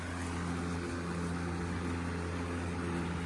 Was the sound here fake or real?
real